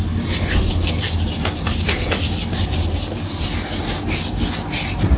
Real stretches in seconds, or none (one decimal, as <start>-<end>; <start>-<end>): 0.0-5.2